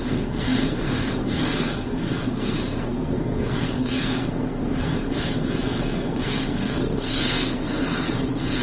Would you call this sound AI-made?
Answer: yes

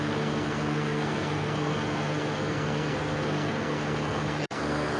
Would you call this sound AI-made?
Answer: yes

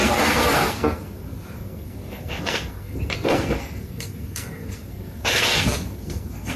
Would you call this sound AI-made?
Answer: yes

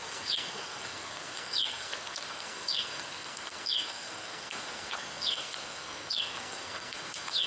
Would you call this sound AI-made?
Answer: yes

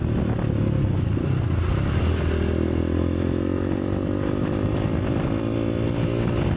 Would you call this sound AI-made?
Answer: no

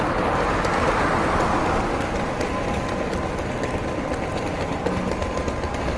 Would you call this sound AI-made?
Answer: no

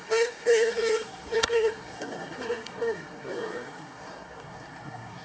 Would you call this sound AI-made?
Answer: yes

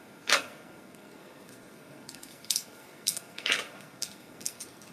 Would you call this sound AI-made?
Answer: yes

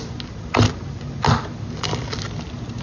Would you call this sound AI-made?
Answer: no